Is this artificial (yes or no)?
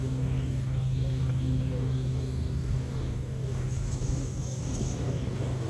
yes